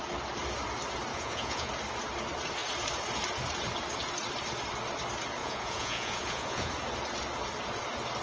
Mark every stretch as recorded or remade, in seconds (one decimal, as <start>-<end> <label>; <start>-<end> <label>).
0.0-1.1 recorded; 1.1-1.7 remade; 1.7-5.4 recorded; 5.4-6.7 remade; 6.7-8.2 recorded